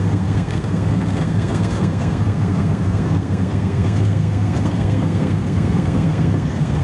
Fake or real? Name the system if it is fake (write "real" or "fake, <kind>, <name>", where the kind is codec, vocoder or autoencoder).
fake, codec, SNAC